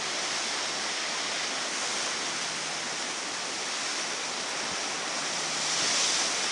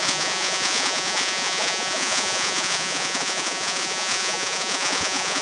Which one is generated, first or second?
second